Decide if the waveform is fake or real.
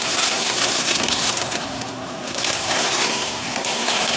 fake